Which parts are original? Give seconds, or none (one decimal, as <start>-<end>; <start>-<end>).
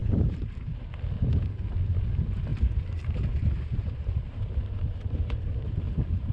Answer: 0.9-2.5